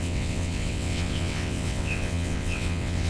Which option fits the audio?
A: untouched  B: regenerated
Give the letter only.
B